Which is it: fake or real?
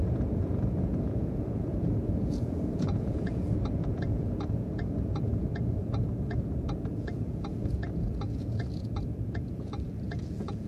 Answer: fake